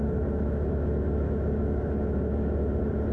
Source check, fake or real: fake